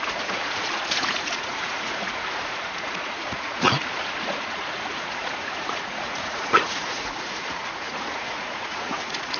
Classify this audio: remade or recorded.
remade